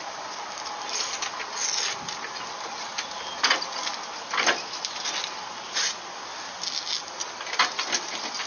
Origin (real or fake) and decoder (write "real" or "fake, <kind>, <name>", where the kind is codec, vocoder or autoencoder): real